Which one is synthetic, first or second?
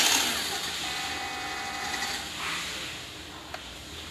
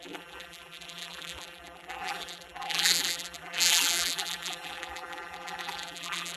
second